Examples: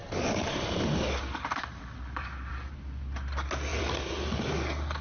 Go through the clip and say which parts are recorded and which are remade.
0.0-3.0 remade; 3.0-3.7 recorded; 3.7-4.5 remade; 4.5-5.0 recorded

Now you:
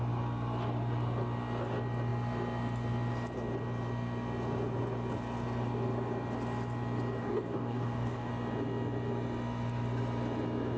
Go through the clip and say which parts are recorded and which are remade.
0.0-7.2 recorded; 7.2-8.3 remade; 8.3-10.8 recorded